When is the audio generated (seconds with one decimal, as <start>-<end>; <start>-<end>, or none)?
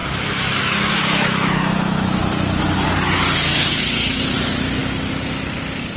0.0-2.2; 3.5-4.3